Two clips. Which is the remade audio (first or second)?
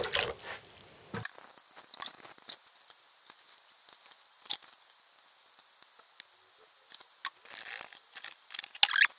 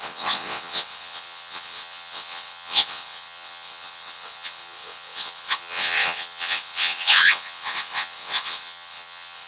second